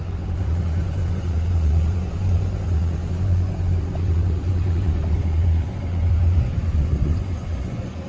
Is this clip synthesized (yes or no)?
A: yes